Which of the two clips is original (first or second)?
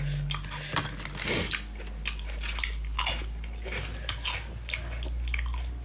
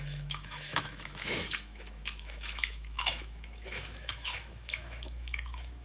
first